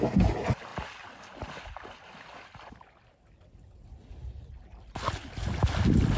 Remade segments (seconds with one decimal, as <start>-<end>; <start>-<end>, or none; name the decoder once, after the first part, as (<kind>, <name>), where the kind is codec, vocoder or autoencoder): none